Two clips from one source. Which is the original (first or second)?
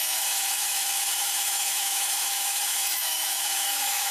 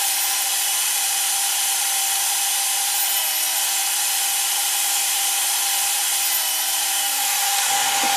second